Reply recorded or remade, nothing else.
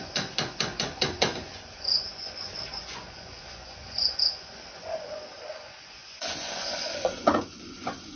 remade